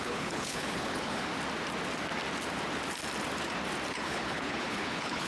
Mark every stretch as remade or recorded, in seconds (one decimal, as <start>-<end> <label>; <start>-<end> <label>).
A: 0.0-1.3 remade; 1.3-3.9 recorded; 3.9-5.3 remade